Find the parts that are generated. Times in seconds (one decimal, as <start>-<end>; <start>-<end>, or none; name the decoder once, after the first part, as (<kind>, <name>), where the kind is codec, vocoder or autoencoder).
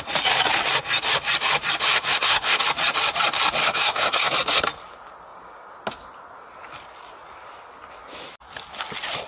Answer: 1.9-2.6 (codec, SNAC); 3.6-4.3